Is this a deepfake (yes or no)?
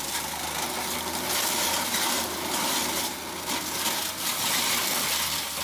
no